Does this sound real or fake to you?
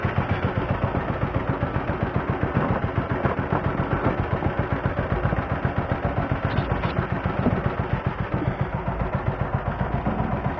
real